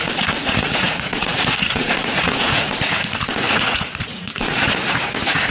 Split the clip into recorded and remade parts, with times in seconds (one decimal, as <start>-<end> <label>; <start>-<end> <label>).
0.0-5.5 remade